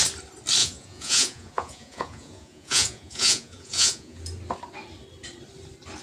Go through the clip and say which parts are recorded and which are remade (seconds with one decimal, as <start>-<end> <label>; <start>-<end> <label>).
0.0-0.6 recorded; 0.6-4.2 remade; 4.2-6.0 recorded